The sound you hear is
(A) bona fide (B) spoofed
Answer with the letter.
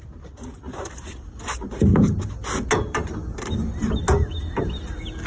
A